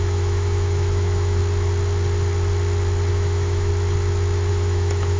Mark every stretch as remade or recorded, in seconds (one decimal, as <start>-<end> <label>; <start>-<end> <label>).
0.0-1.4 remade; 1.4-3.1 recorded; 3.1-3.7 remade; 3.7-4.5 recorded; 4.5-5.2 remade